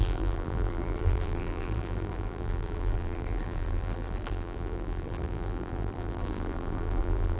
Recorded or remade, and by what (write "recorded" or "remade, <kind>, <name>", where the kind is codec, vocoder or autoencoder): remade, vocoder, BigVGAN v2